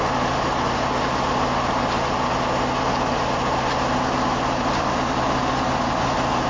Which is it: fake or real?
real